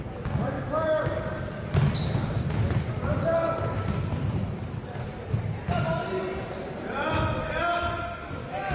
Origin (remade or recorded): recorded